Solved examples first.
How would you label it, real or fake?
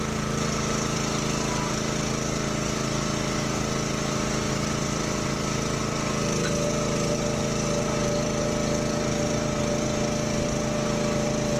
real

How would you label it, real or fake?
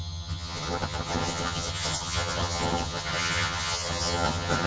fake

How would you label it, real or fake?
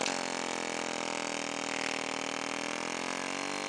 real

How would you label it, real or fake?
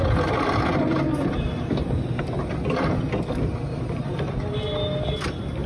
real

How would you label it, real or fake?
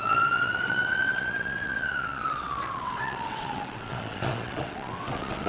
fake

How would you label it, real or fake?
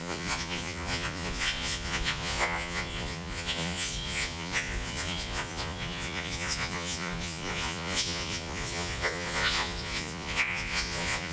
fake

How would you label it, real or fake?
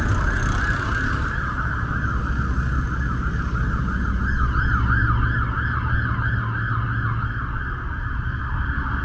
real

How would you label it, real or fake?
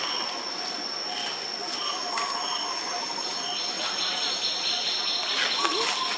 real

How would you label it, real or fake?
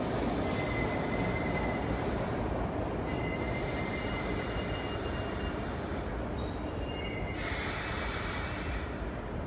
real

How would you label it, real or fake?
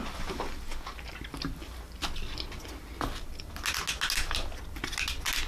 real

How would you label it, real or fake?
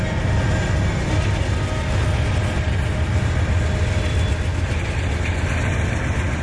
real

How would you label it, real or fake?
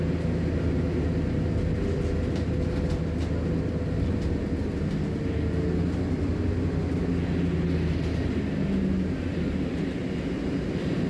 real